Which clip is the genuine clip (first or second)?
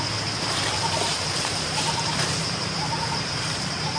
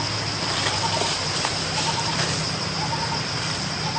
second